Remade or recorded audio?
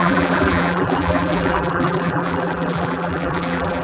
remade